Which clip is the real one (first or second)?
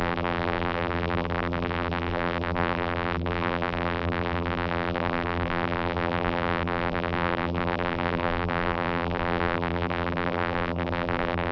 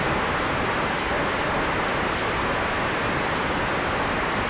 second